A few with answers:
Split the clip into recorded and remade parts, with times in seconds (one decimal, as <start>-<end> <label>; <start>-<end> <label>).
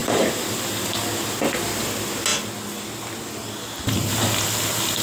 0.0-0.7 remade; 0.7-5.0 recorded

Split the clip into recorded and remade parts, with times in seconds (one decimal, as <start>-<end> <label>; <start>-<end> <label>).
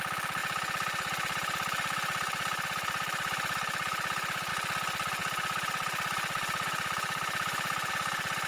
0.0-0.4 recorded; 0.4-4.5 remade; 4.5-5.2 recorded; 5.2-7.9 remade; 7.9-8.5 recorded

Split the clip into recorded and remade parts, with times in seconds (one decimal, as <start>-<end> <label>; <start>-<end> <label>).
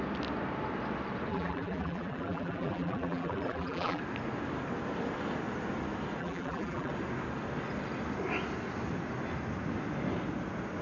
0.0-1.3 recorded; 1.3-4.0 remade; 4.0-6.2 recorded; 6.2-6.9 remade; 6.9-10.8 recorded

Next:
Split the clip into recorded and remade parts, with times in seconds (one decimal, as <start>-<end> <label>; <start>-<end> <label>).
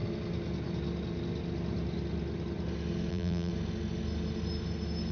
0.0-3.1 recorded; 3.1-3.5 remade; 3.5-5.1 recorded